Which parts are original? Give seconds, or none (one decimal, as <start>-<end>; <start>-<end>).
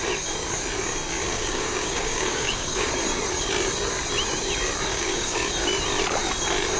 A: 0.0-1.3; 2.9-4.9; 5.5-6.8